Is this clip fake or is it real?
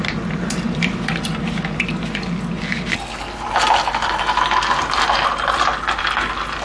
real